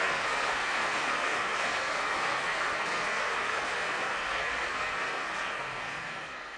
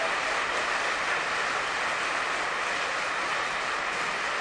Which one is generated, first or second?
first